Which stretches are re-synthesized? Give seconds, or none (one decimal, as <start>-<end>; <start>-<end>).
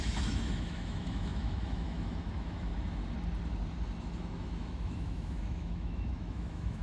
0.0-2.7; 4.0-6.8